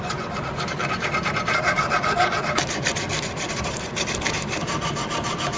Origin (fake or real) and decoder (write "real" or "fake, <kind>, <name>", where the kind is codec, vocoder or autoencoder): fake, vocoder, BigVGAN v2